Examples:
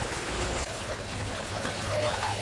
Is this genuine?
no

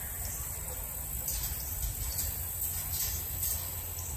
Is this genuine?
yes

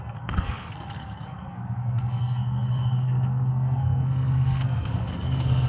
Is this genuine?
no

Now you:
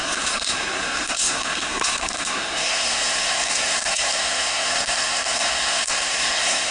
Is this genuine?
no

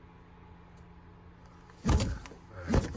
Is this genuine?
yes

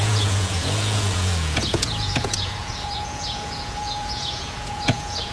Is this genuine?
no